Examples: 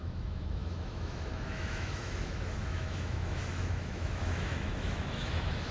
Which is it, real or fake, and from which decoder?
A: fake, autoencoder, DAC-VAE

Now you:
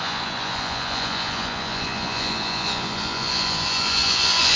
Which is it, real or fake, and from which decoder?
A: fake, vocoder, Vocos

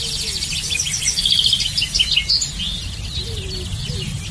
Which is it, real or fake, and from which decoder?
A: real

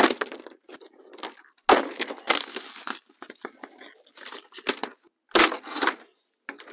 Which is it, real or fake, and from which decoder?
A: real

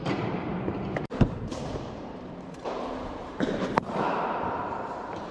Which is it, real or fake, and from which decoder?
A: fake, vocoder, BigVGAN v2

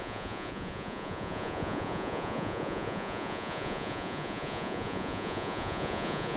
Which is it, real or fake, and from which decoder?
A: fake, vocoder, Vocos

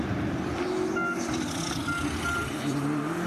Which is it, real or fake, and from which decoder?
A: real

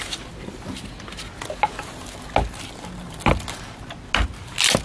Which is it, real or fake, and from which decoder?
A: real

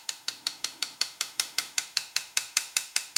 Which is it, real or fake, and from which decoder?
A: fake, autoencoder, DAC-VAE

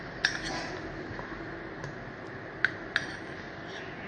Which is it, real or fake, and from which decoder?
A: real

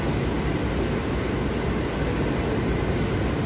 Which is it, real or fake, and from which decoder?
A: real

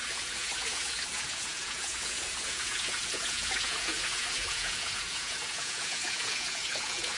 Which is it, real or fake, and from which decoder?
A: fake, vocoder, Vocos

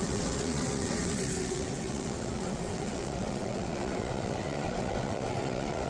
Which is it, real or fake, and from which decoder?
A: fake, vocoder, WaveNeXt